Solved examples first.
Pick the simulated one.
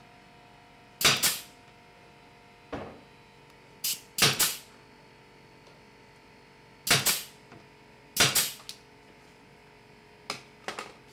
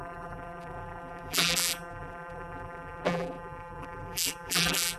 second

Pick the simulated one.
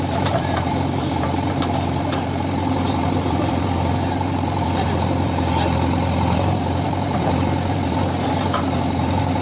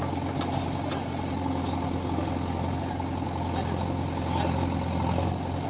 first